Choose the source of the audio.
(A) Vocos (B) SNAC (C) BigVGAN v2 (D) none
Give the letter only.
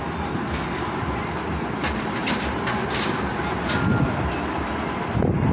D